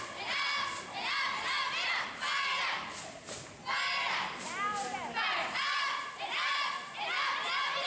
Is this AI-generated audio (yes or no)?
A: no